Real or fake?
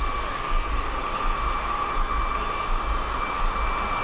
real